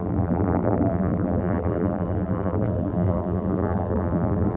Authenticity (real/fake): fake